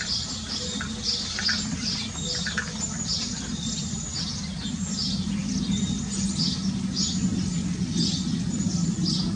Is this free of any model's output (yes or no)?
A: yes